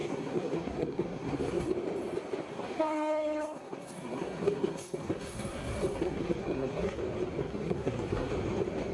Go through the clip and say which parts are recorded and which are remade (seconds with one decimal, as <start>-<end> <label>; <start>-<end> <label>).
0.0-1.7 remade; 1.7-2.5 recorded; 2.5-7.0 remade; 7.0-7.4 recorded; 7.4-8.3 remade; 8.3-8.9 recorded